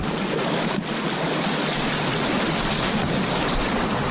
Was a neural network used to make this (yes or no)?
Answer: no